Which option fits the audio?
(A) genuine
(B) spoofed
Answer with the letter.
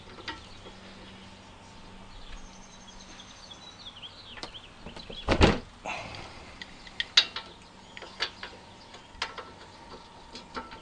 A